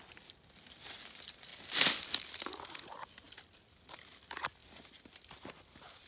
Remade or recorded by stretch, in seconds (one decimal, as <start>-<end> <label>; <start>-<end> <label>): 0.0-4.6 remade; 4.6-5.5 recorded; 5.5-6.1 remade